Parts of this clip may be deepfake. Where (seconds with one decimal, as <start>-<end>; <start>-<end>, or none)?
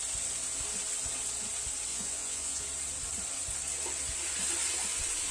1.9-2.6